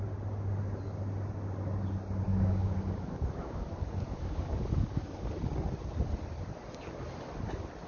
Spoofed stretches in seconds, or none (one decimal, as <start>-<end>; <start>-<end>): 2.3-5.3